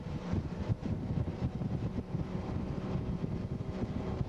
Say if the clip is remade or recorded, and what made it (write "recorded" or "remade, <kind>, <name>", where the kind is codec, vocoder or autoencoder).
remade, vocoder, BigVGAN v2